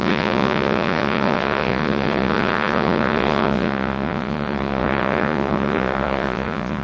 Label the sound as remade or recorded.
remade